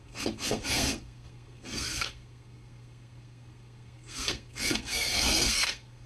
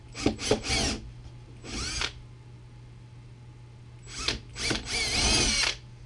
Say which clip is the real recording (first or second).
second